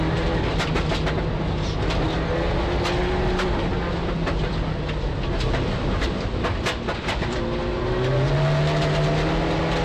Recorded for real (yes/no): yes